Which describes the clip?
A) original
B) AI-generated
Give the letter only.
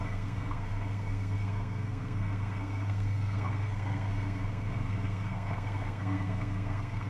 B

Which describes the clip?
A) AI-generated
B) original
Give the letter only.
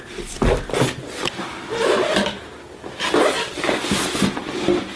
B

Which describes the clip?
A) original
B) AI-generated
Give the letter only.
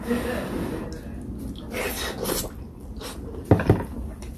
A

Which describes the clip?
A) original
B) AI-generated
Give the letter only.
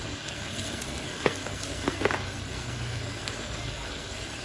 B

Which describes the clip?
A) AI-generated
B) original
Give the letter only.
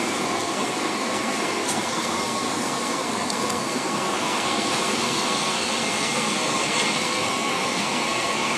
A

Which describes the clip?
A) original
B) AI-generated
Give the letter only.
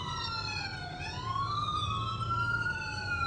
A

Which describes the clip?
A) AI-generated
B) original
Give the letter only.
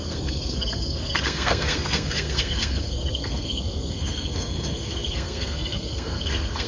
A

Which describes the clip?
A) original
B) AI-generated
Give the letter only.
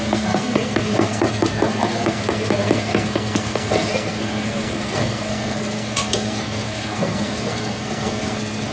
B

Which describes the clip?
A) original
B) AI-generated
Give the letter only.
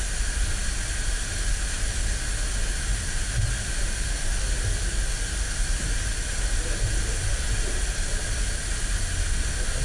A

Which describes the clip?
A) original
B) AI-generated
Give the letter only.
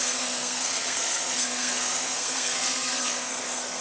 B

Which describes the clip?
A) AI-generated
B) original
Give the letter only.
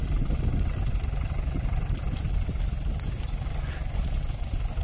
B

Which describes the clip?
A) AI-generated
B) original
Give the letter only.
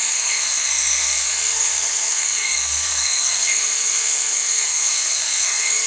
A